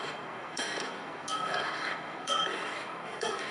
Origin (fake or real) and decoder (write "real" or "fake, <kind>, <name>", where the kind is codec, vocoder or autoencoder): fake, codec, SNAC